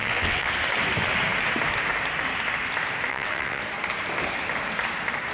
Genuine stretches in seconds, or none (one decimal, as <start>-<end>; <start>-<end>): 0.5-3.1; 3.6-5.3

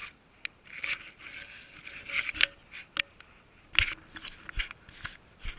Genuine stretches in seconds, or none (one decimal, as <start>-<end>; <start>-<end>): 0.0-5.6